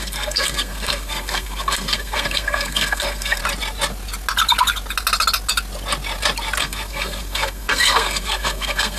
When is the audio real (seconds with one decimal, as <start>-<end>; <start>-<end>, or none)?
3.4-6.6